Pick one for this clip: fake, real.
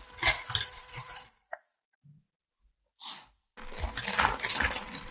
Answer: real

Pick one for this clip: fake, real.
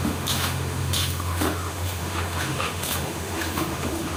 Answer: fake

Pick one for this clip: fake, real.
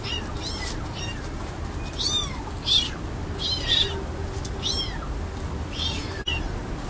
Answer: real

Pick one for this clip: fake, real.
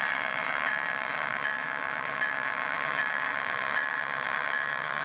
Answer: fake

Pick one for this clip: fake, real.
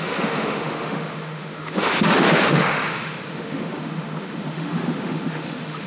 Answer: fake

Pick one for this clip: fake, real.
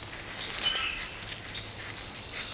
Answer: real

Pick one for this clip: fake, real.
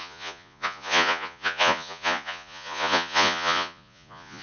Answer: fake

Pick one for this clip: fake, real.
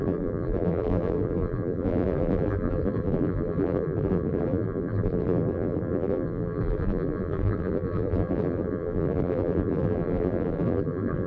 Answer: fake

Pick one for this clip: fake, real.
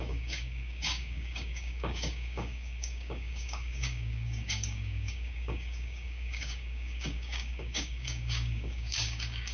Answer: fake